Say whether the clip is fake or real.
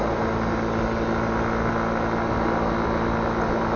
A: real